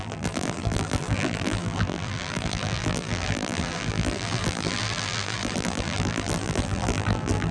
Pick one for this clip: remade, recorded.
remade